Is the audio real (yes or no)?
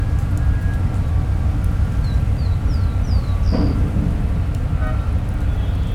yes